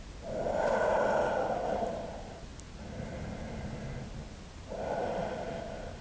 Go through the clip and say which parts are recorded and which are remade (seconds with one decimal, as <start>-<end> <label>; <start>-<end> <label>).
0.0-6.0 recorded